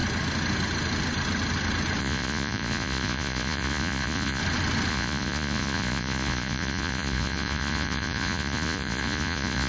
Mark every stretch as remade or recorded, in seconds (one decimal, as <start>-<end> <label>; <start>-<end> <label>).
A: 0.0-2.0 recorded; 2.0-4.4 remade; 4.4-4.9 recorded; 4.9-9.7 remade